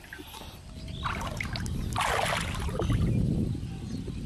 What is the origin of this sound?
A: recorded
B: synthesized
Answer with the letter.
A